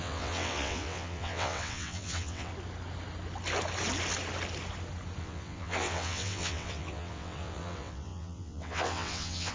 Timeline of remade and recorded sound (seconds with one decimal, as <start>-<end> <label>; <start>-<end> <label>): 0.0-2.5 remade; 2.5-5.2 recorded; 5.2-9.5 remade